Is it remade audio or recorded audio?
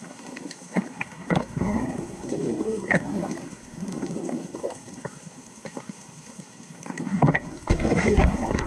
remade